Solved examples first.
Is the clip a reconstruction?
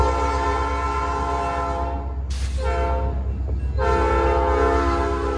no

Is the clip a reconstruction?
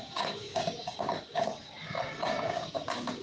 yes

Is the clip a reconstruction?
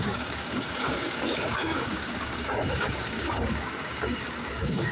yes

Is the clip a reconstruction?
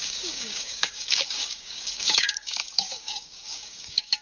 yes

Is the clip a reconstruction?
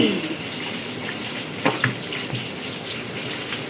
no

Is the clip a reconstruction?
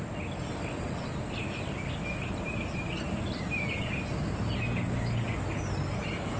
no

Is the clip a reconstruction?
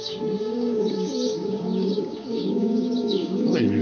yes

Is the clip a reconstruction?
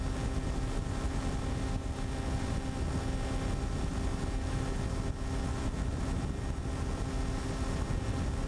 no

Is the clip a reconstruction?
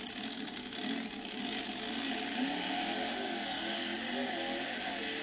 no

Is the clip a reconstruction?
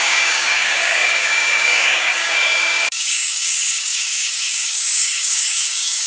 yes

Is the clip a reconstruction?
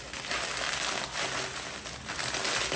no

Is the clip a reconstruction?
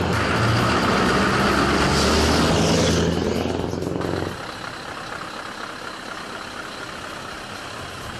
no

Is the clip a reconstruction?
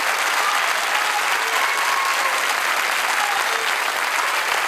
no